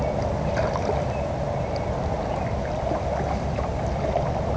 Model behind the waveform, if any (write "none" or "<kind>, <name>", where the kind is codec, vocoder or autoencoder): none